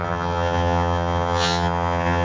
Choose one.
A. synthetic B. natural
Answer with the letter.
A